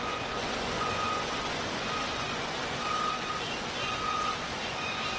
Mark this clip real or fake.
fake